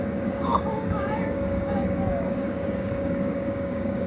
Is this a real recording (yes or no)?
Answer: no